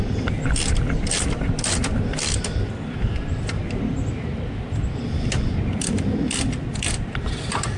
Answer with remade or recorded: remade